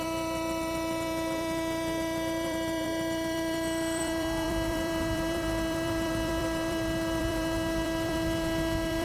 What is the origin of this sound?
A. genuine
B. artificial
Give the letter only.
B